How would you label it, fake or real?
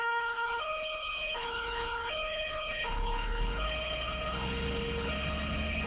fake